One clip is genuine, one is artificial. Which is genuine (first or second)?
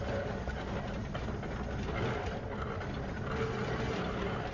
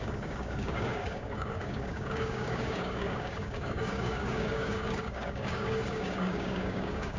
first